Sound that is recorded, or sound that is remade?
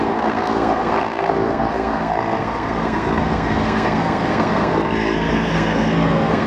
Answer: remade